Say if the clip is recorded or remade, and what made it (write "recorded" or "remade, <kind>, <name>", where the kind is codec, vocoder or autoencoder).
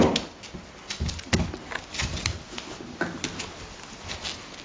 recorded